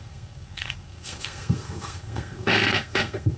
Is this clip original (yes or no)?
no